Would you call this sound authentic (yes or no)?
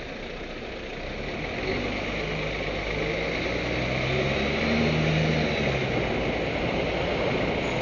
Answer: yes